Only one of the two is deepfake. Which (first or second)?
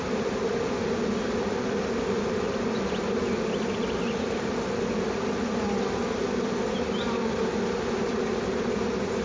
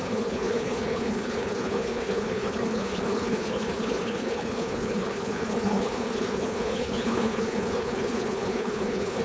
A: second